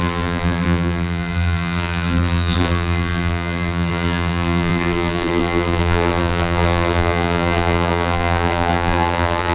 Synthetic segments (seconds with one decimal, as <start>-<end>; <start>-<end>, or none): 0.0-9.5